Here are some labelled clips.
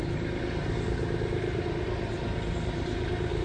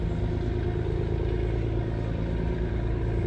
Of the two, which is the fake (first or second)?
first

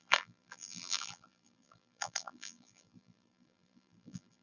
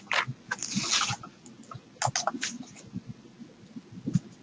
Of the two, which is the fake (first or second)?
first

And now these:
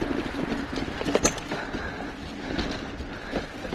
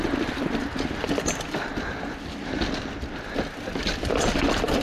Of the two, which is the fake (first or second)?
second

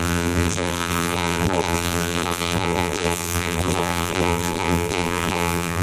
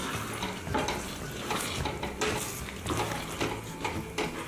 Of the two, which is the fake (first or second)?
first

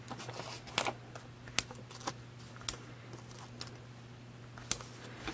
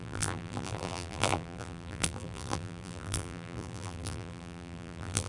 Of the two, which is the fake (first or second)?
second